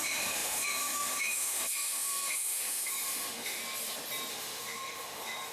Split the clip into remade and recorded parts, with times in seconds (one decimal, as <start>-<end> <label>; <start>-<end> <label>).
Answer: 0.0-3.6 remade; 3.6-4.3 recorded; 4.3-5.5 remade